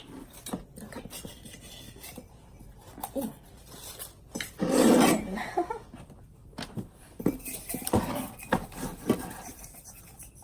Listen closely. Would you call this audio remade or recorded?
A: recorded